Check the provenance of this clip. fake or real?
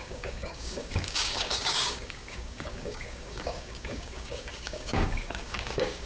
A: fake